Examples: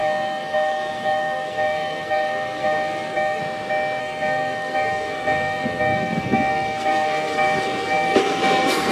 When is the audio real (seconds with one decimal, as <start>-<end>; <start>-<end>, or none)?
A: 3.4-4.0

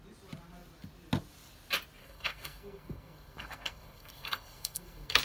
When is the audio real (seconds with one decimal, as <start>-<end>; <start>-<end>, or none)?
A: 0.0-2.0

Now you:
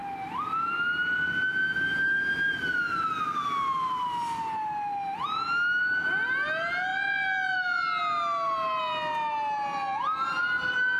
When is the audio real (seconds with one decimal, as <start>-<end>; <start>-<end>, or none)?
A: 0.0-11.0

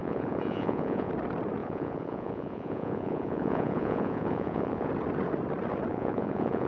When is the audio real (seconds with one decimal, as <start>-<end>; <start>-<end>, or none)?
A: 1.1-1.6; 4.9-5.9

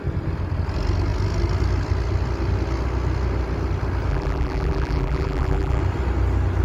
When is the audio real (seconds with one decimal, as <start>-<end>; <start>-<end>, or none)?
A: 0.0-4.1; 5.8-6.6

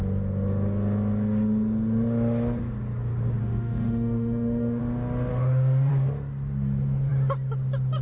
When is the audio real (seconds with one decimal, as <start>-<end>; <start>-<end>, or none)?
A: 0.0-3.4; 4.8-5.3; 5.9-8.0